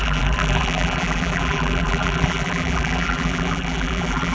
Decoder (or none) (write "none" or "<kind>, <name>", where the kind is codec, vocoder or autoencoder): vocoder, BigVGAN v2